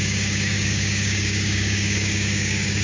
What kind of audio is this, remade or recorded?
remade